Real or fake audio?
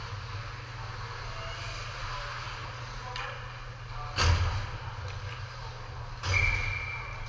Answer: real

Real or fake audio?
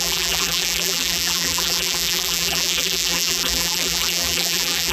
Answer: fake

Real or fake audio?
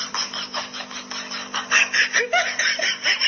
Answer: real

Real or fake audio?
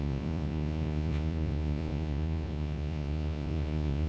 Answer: fake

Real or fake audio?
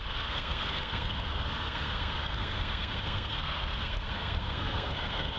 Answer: fake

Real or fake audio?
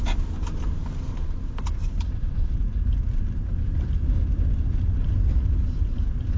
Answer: real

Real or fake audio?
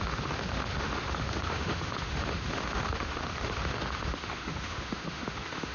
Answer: fake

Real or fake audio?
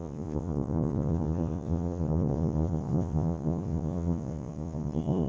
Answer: fake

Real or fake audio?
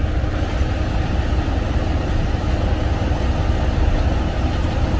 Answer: real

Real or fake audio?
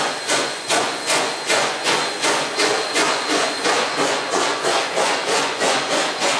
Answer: fake